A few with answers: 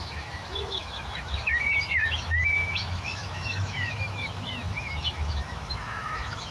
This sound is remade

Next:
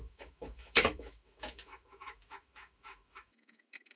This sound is remade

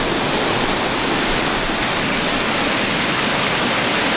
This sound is recorded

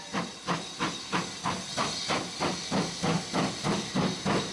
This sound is recorded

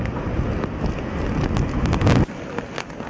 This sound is recorded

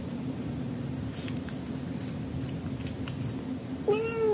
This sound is recorded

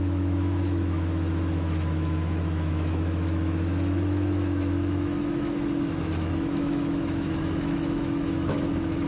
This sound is remade